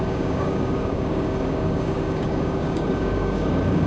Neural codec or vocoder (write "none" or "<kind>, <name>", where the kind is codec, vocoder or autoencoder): codec, DAC